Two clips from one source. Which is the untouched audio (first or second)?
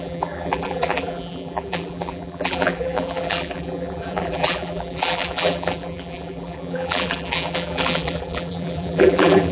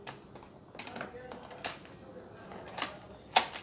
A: second